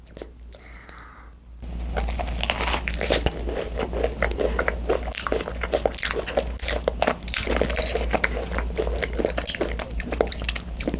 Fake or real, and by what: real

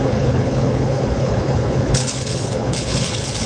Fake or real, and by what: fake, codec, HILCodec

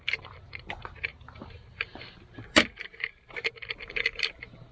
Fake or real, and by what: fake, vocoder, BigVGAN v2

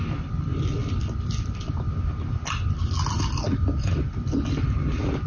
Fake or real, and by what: real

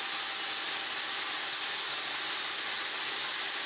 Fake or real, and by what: real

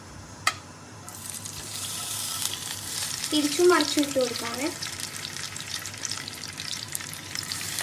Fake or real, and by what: fake, vocoder, BigVGAN v2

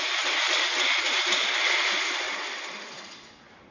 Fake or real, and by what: real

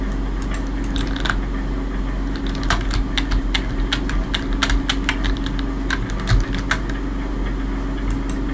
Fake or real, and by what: real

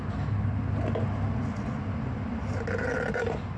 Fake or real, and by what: real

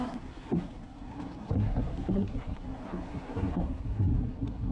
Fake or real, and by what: fake, codec, SNAC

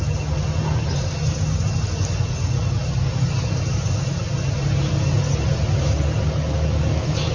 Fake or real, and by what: real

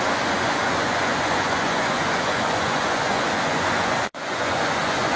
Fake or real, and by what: fake, vocoder, Vocos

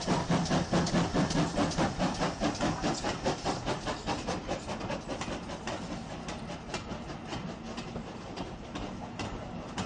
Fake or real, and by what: real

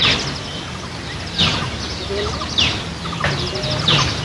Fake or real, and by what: real